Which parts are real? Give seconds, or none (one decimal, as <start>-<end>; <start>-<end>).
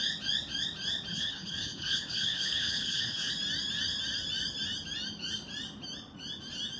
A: 0.0-1.1; 3.3-6.8